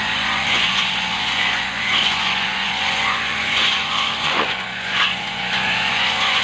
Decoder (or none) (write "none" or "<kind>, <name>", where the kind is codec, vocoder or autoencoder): vocoder, Vocos